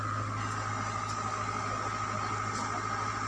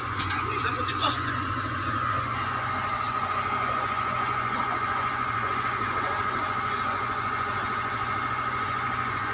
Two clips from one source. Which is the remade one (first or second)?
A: second